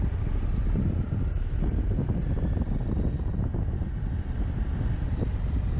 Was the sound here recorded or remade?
recorded